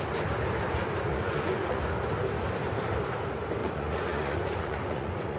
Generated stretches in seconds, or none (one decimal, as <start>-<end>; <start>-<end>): 1.1-1.8; 3.6-5.4